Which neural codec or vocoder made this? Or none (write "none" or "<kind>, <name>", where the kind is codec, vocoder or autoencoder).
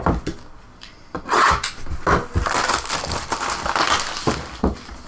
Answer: none